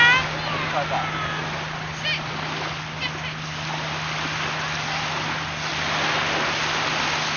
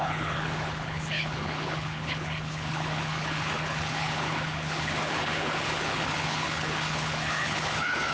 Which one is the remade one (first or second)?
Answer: second